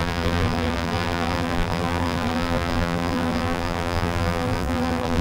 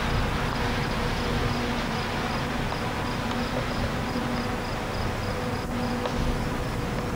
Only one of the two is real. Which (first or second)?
second